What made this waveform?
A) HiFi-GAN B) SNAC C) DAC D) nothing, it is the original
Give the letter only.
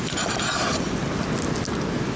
D